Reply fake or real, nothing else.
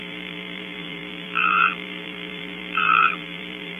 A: fake